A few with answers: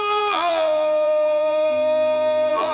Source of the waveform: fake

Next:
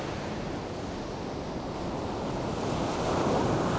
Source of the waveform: real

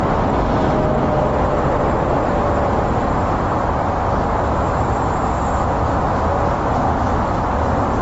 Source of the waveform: real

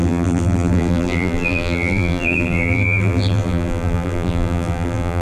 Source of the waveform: fake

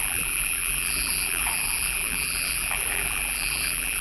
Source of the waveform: fake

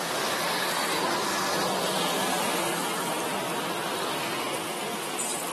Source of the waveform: real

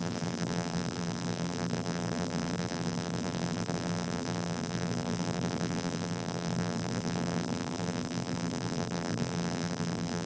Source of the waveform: fake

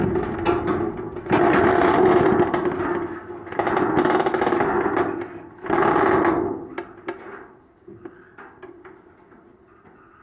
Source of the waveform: real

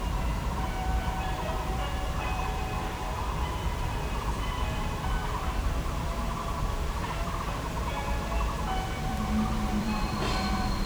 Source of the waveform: fake